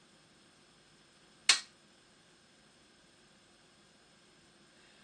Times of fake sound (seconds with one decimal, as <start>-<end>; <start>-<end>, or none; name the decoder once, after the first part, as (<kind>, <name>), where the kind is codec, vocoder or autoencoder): none